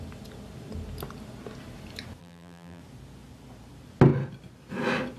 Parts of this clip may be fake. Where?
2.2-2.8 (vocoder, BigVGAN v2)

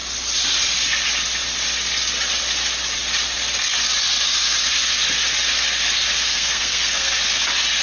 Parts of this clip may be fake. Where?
6.3-7.1 (codec, SNAC)

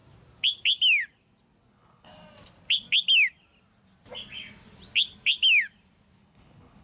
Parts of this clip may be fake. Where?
1.7-2.1 (codec, HILCodec); 6.2-6.8

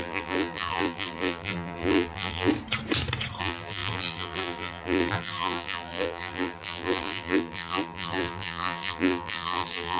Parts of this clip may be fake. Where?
0.0-2.5 (vocoder, BigVGAN v2); 3.4-10.0

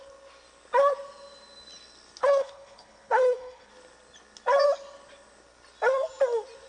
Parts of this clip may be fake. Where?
2.2-3.7 (codec, HILCodec)

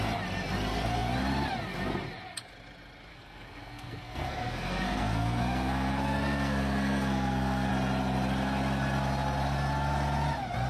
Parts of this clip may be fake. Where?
3.1-7.7 (codec, SNAC)

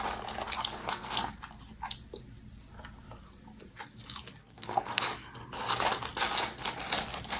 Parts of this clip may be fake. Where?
0.8-1.3 (codec, SNAC); 4.4-5.0